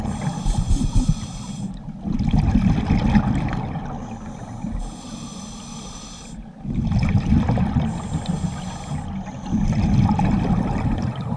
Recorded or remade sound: recorded